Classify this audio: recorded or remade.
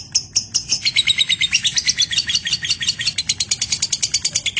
recorded